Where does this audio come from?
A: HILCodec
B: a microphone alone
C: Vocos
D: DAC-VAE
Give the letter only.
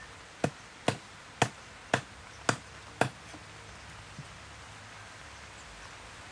B